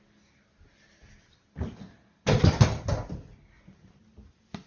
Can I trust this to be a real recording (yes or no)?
yes